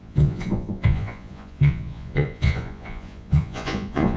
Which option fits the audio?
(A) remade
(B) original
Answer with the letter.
A